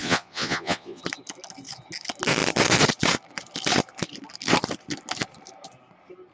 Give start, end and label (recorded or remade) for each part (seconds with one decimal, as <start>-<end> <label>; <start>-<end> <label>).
0.0-1.0 remade; 1.0-6.3 recorded